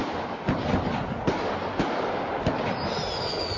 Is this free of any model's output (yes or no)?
yes